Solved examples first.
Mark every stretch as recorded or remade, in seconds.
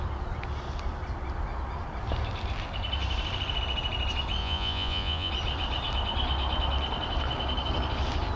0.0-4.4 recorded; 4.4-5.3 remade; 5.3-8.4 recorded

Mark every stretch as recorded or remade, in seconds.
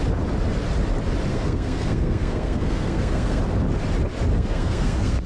0.0-1.3 recorded; 1.3-3.4 remade; 3.4-4.3 recorded; 4.3-5.3 remade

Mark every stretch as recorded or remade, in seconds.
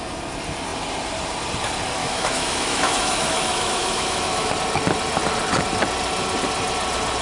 0.0-2.0 recorded; 2.0-4.5 remade; 4.5-7.2 recorded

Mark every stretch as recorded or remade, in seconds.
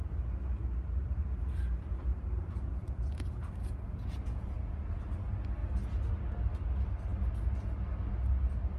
0.0-2.8 recorded; 2.8-5.0 remade; 5.0-8.8 recorded